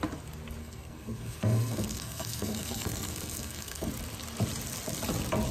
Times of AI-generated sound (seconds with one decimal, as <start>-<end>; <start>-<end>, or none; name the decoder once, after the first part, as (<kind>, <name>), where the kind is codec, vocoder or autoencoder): 0.6-3.9 (codec, SNAC)